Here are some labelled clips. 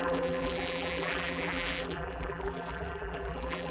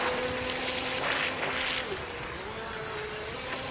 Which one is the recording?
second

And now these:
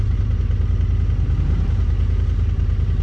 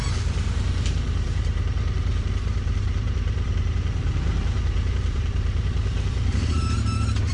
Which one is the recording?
first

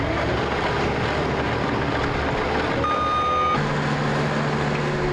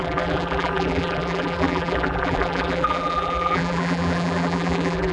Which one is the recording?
first